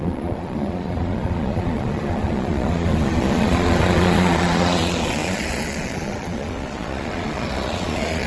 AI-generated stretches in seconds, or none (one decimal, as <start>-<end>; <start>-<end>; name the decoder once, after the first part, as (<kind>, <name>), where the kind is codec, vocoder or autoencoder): 0.0-8.3 (vocoder, Vocos)